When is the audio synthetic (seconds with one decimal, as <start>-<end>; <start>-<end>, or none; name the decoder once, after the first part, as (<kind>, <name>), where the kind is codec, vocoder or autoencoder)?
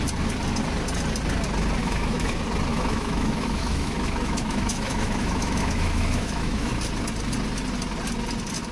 1.8-2.3 (autoencoder, DAC-VAE); 2.7-6.7